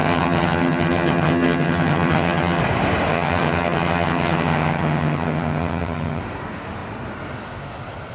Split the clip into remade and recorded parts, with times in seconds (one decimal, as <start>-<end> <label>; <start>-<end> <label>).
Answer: 0.0-2.6 remade; 2.6-3.1 recorded; 3.1-6.2 remade; 6.2-8.1 recorded